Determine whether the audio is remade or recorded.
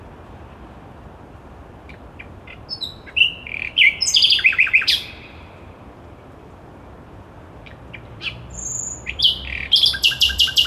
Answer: remade